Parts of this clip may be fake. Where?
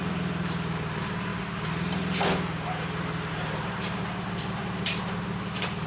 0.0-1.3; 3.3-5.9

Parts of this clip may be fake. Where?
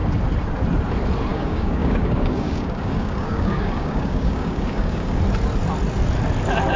1.3-5.2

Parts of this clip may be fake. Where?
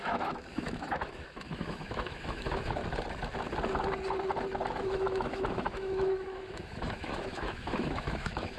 0.0-2.8; 4.8-8.6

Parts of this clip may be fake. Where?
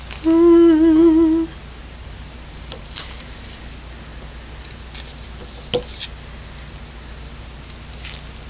1.8-3.6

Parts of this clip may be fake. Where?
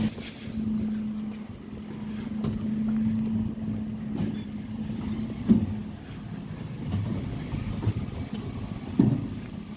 none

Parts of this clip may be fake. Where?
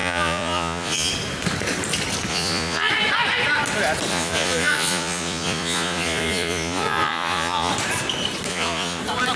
0.0-1.1; 2.3-2.9; 4.1-7.7; 8.5-9.0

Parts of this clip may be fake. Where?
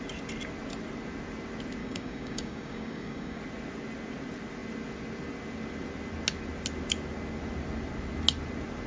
1.8-3.4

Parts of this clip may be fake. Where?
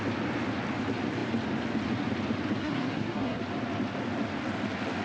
2.6-3.4